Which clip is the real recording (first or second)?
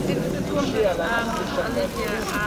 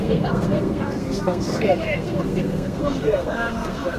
first